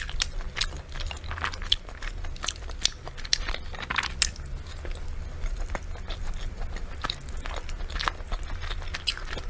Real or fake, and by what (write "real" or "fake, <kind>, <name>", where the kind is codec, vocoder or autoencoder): real